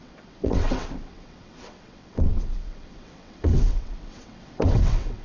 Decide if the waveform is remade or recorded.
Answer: remade